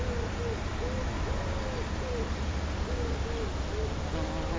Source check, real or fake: real